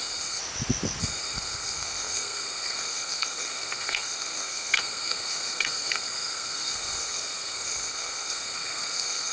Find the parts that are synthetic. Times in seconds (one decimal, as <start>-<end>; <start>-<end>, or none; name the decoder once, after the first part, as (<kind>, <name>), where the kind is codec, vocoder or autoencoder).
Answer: 0.0-0.4 (codec, SNAC); 1.0-9.3